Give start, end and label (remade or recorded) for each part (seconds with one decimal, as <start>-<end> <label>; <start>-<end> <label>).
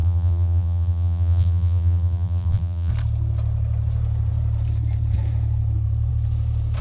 0.0-2.9 remade; 2.9-6.8 recorded